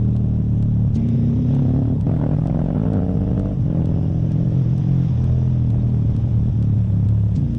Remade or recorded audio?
recorded